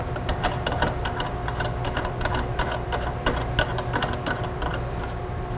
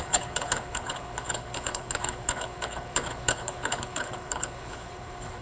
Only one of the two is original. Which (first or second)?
first